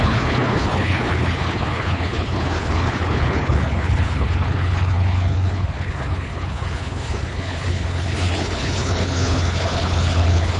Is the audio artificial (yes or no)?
yes